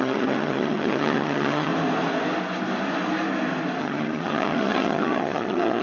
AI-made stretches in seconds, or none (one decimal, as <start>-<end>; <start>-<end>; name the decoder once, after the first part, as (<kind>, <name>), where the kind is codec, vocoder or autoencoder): 0.0-1.7 (vocoder, HiFi-GAN); 3.8-5.8